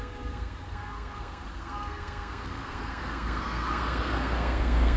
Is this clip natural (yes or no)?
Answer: no